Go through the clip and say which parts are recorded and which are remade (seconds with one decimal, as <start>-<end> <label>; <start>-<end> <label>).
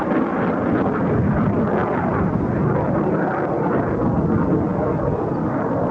0.0-5.9 recorded